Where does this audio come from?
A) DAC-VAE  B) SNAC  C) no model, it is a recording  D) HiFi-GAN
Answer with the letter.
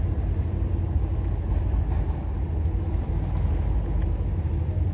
C